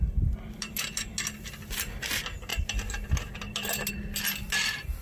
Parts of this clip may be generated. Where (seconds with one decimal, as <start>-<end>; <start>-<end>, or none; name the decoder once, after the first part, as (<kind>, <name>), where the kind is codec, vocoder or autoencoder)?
none

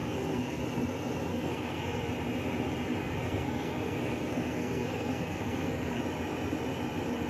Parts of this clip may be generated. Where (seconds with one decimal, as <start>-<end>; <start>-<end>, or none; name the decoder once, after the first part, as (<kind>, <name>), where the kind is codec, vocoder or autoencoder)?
0.0-0.6 (codec, SNAC); 1.3-2.1; 3.0-6.0

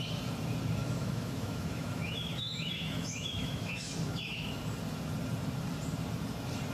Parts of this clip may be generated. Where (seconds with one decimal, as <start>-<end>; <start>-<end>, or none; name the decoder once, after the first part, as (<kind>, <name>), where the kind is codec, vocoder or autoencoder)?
0.8-4.6 (autoencoder, DAC-VAE)

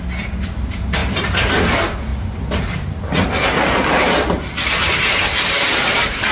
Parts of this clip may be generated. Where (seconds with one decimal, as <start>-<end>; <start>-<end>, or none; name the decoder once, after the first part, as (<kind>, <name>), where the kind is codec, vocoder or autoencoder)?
0.0-2.1 (vocoder, BigVGAN v2); 5.2-6.3